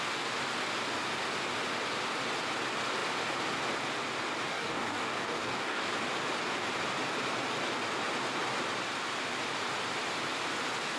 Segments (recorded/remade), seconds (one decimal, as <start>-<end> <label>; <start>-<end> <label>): 0.0-4.5 recorded; 4.5-5.9 remade; 5.9-11.0 recorded